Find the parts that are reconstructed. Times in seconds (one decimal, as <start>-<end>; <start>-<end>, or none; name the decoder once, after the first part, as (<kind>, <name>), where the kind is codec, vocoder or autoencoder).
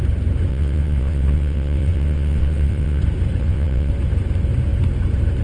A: 0.5-3.0 (vocoder, WaveNeXt); 3.4-3.9